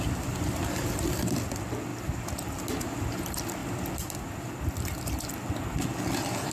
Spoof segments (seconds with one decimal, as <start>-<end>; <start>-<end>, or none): none